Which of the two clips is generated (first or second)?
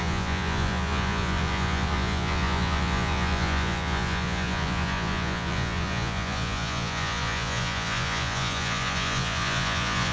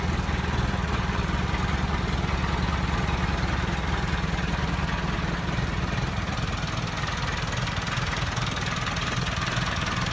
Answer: first